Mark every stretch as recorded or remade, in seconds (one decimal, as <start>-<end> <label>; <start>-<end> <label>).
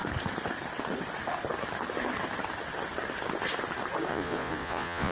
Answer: 0.0-4.1 recorded; 4.1-5.1 remade